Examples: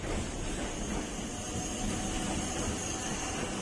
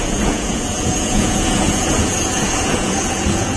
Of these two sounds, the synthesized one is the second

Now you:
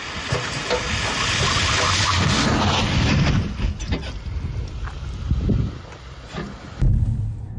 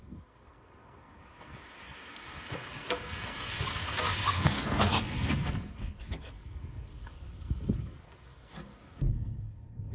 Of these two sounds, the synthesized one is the second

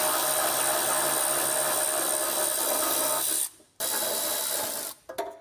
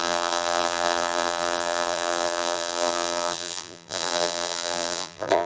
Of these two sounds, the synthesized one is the second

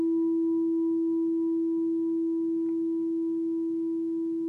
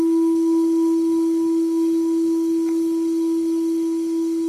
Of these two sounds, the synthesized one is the second